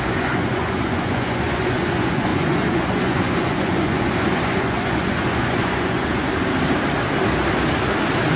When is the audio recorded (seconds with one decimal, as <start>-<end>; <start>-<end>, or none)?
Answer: 6.3-8.4